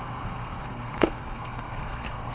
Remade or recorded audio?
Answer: remade